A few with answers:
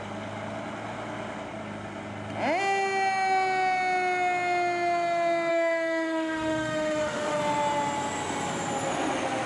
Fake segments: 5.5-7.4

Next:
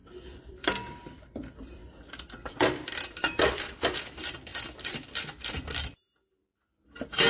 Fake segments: 3.2-3.7

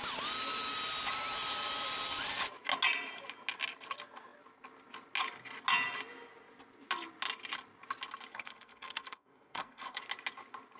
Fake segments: 8.3-10.0

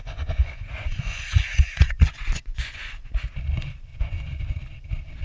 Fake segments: 0.0-3.1; 3.9-4.4